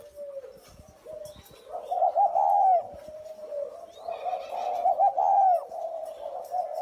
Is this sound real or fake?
real